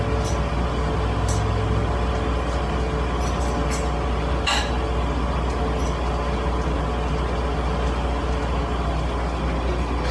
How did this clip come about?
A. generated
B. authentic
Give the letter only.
B